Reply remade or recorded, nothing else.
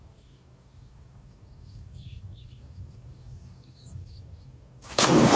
remade